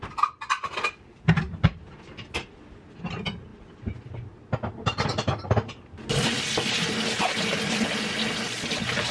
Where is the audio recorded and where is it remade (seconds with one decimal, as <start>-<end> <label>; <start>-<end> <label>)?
0.0-9.1 recorded

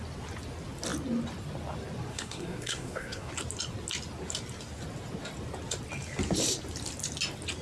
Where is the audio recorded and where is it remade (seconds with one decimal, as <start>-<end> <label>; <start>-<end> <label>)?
0.0-2.1 recorded; 2.1-3.3 remade; 3.3-7.6 recorded

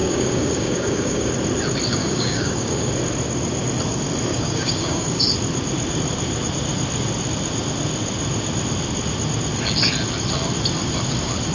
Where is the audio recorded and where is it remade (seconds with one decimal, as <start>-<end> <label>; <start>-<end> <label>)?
0.0-1.3 remade; 1.3-2.0 recorded; 2.0-2.9 remade; 2.9-4.3 recorded; 4.3-5.2 remade; 5.2-11.5 recorded